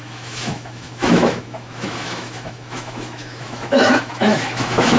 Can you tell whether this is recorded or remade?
remade